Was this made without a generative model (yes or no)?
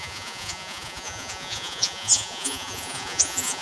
no